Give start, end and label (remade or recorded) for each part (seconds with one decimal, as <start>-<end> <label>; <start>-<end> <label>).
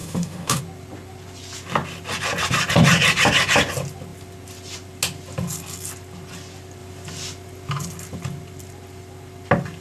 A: 0.0-0.6 remade; 0.6-9.8 recorded